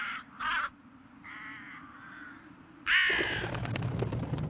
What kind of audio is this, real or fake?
fake